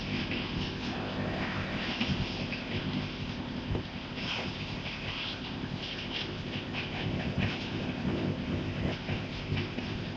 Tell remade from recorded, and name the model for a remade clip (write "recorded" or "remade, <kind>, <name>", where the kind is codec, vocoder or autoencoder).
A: remade, codec, ZipCodec